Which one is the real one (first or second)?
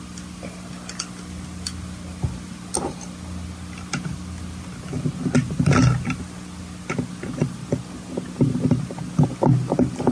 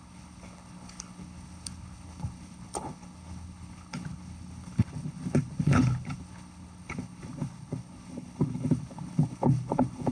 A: first